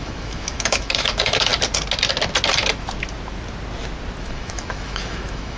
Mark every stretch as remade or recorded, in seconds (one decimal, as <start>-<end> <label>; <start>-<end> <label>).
0.0-1.5 remade; 1.5-4.2 recorded; 4.2-5.6 remade

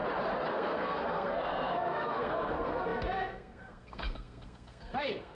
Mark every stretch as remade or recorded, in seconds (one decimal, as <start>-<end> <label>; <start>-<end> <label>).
0.0-0.5 recorded; 0.5-5.3 remade

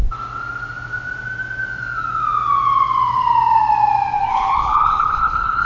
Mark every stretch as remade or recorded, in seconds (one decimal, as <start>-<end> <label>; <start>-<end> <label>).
0.0-4.3 recorded; 4.3-5.7 remade